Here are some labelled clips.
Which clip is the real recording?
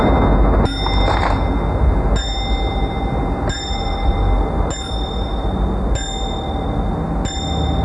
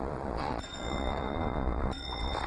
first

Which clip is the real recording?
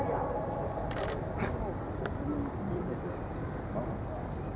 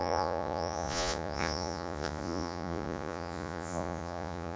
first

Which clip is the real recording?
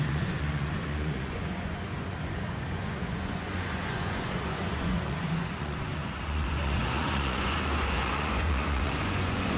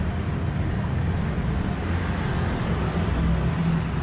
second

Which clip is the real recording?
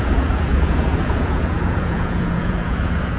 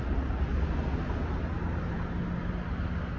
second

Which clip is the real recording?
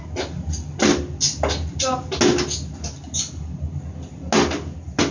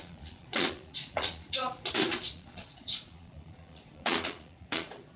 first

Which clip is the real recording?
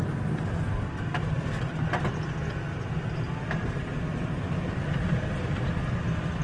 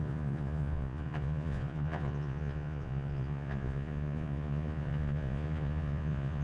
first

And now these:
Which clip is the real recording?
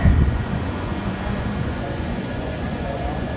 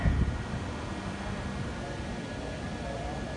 second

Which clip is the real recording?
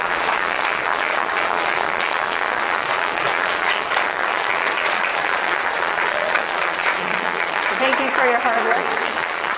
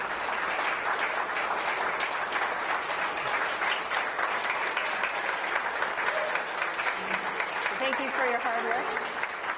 second